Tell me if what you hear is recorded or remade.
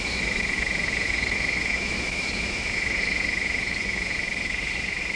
remade